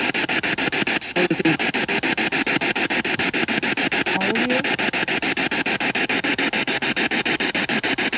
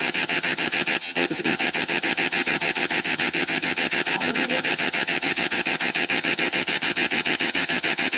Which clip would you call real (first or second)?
first